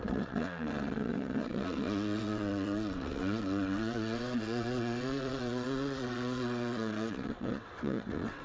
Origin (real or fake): fake